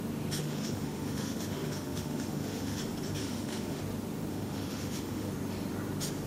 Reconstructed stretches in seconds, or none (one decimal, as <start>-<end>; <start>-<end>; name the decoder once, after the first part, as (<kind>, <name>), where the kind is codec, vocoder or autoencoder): 0.4-2.8 (autoencoder, DAC-VAE); 3.2-3.8; 4.3-5.3